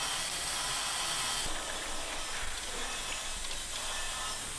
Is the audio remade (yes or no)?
no